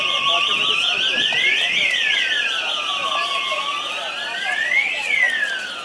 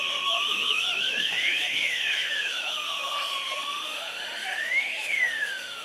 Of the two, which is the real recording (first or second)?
first